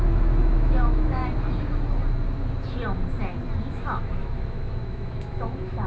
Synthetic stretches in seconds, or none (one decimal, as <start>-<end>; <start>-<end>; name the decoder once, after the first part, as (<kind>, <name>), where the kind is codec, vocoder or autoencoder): 0.0-1.2 (autoencoder, DAC-VAE); 3.6-5.9